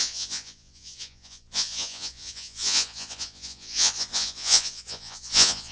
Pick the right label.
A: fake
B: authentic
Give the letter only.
A